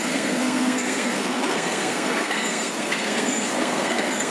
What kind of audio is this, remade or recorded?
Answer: remade